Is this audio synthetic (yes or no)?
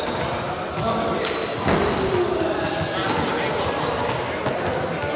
no